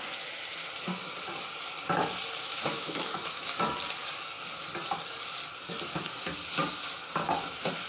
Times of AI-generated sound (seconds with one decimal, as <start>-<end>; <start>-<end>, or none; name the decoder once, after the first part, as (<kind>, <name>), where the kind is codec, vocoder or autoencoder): 2.5-3.6 (autoencoder, DAC-VAE)